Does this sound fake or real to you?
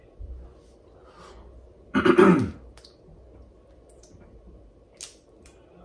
real